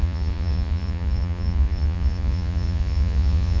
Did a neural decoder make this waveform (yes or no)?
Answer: yes